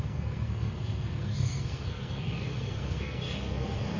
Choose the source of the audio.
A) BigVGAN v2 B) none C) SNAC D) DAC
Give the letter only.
C